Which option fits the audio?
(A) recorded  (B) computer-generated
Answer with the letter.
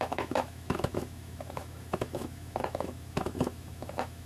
B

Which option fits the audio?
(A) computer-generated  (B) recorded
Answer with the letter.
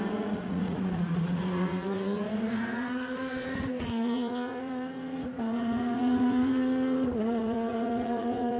A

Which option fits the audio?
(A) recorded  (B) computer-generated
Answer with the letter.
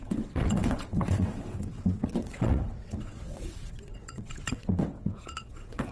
B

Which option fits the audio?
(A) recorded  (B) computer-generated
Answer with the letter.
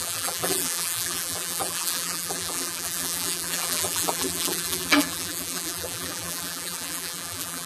B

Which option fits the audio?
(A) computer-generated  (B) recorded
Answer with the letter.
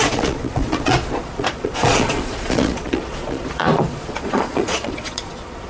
A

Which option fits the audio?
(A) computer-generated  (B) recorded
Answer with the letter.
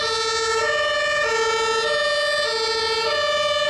B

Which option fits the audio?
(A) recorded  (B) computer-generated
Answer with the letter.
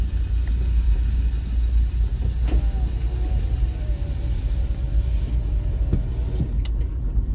A